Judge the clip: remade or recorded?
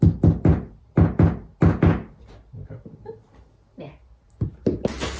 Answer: recorded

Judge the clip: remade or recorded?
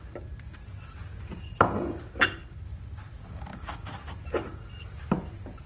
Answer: recorded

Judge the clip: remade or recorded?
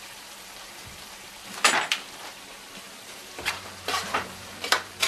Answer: remade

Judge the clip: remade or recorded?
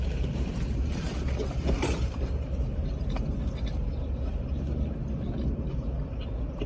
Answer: recorded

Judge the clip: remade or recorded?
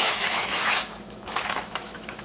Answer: remade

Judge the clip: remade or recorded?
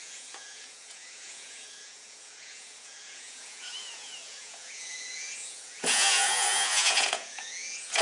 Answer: remade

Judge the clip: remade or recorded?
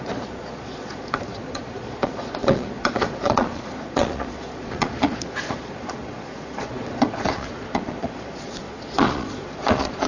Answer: remade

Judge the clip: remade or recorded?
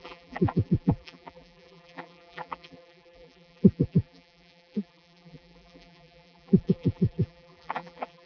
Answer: remade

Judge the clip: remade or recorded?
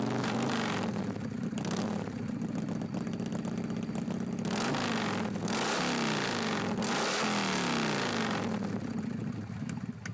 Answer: recorded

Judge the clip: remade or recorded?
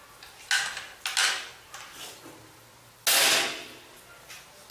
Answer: recorded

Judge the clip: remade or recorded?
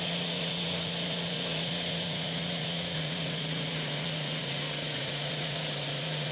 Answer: remade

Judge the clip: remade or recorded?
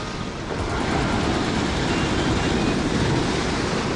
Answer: recorded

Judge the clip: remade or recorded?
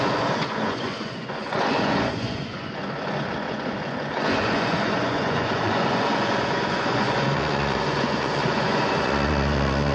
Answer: remade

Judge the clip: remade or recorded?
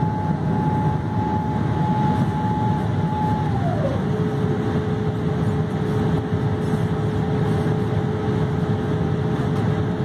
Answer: recorded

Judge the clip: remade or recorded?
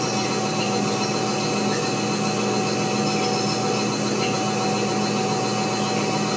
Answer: recorded